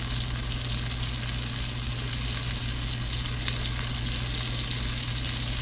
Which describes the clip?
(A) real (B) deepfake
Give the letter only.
A